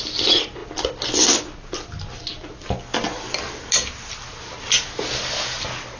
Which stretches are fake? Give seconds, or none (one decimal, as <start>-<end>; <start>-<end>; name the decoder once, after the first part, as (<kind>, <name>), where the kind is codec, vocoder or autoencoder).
none